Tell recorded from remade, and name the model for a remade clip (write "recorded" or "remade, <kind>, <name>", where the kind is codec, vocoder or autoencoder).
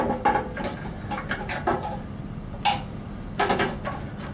recorded